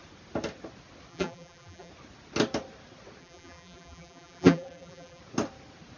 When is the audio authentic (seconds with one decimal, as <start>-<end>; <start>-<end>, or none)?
0.0-1.1; 1.9-3.2; 5.2-6.0